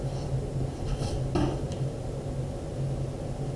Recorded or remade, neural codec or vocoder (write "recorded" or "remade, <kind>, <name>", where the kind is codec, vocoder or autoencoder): recorded